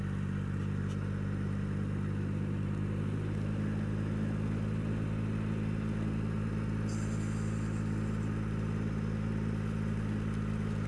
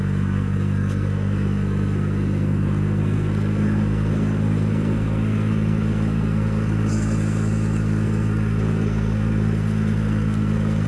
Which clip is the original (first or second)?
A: first